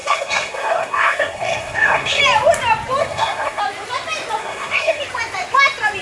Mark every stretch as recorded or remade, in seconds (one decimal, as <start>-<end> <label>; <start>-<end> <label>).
0.0-2.2 remade; 2.2-3.0 recorded; 3.0-3.6 remade; 3.6-4.4 recorded; 4.4-5.0 remade; 5.0-6.0 recorded